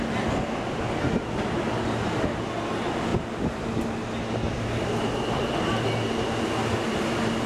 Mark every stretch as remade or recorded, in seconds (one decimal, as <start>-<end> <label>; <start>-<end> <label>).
0.0-7.5 recorded